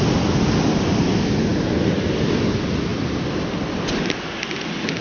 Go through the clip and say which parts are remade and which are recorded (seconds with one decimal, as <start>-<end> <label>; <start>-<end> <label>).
0.0-5.0 recorded